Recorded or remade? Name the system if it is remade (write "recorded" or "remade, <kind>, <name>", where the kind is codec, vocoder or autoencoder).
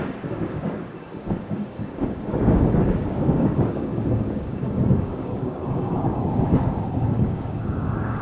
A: remade, codec, DAC